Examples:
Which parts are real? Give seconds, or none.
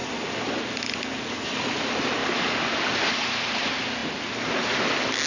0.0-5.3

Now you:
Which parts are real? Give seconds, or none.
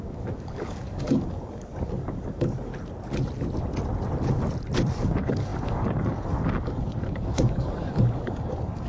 2.7-4.9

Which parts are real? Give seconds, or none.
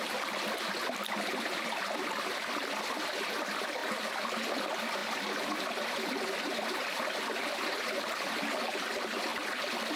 0.0-10.0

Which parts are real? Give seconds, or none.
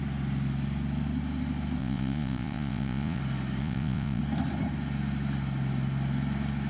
0.0-1.8; 3.2-3.6; 4.2-6.7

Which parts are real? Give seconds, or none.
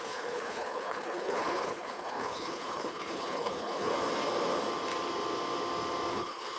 3.9-6.1